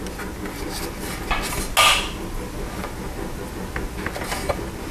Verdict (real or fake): real